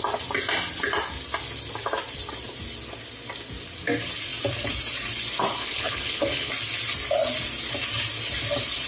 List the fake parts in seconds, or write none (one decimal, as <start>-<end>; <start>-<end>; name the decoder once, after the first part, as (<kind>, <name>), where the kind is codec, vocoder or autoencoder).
5.6-6.5 (codec, HILCodec)